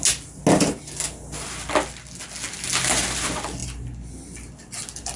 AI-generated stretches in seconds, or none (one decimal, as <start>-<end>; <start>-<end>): none